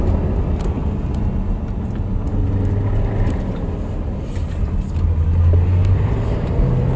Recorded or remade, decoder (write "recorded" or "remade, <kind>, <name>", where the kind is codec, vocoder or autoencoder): recorded